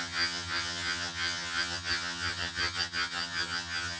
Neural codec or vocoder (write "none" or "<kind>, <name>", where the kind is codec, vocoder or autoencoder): vocoder, HiFi-GAN